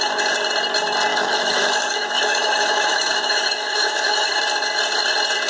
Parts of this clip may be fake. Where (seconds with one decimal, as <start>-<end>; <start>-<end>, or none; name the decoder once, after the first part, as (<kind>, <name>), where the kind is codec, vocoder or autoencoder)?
1.1-4.4 (autoencoder, DAC-VAE)